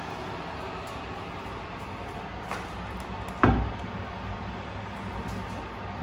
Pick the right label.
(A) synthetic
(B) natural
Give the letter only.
B